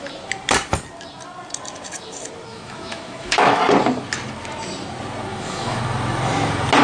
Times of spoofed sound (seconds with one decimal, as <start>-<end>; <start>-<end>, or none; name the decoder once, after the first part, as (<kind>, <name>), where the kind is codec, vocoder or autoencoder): 2.5-3.6 (autoencoder, DAC-VAE); 5.3-5.8